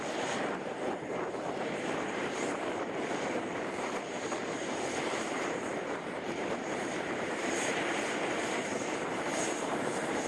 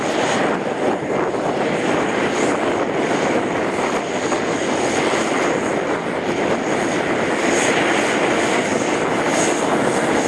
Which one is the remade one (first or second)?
first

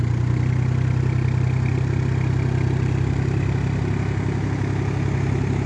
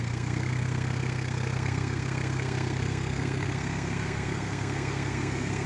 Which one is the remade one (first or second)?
second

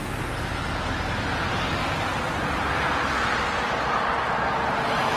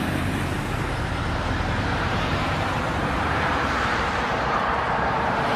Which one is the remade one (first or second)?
second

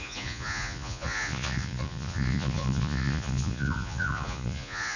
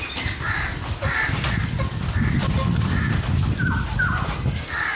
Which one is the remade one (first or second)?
first